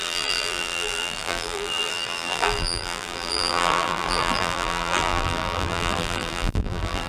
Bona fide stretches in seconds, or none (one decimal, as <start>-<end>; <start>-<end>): none